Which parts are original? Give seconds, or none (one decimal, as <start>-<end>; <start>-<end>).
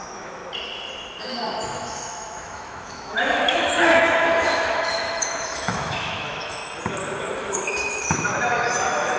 0.4-1.2; 6.6-7.4